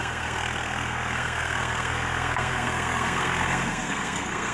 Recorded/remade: remade